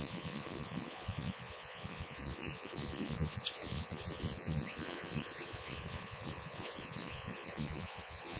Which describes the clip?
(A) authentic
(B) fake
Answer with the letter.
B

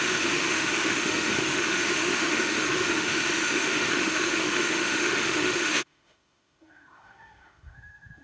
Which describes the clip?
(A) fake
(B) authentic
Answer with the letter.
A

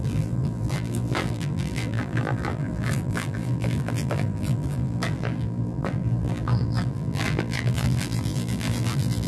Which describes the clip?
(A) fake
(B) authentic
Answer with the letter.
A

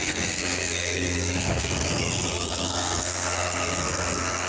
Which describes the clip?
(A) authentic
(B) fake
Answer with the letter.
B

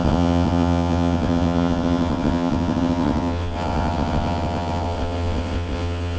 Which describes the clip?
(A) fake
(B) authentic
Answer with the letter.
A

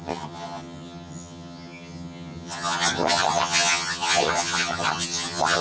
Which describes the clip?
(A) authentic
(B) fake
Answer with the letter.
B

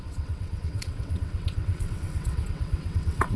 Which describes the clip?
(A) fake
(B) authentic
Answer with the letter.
A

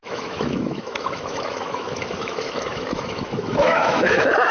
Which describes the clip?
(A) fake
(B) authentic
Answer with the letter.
A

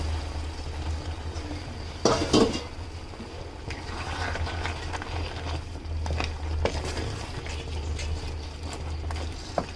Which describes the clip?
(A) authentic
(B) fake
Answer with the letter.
A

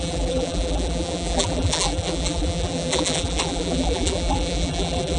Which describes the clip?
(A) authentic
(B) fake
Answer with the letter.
B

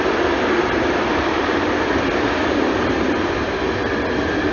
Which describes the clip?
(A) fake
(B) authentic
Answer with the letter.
B